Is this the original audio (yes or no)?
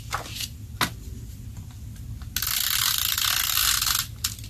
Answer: yes